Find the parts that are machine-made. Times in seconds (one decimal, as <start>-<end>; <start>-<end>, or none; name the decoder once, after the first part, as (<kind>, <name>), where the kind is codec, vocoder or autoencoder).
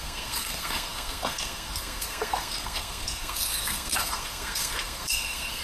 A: 0.0-5.6 (codec, SNAC)